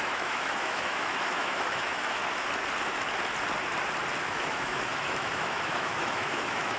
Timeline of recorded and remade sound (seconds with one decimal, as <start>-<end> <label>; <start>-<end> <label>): 0.0-2.2 remade; 2.2-4.2 recorded; 4.2-6.8 remade